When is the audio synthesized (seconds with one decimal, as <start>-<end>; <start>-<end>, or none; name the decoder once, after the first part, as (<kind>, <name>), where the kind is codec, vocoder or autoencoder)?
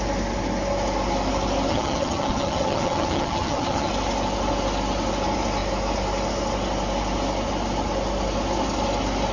1.7-3.9 (vocoder, HiFi-GAN)